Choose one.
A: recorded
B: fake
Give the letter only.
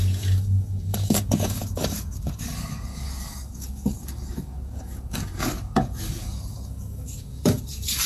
B